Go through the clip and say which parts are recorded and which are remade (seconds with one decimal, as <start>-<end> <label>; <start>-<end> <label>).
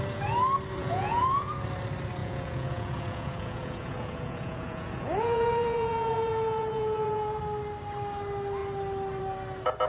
0.0-0.8 recorded; 0.8-1.5 remade; 1.5-2.2 recorded; 2.2-7.4 remade; 7.4-9.9 recorded